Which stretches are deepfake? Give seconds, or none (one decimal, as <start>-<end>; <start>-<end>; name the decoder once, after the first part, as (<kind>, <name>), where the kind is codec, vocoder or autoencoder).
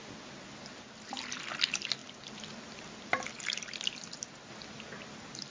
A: none